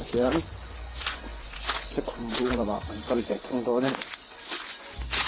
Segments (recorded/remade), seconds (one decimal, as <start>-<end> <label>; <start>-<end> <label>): 0.0-5.3 remade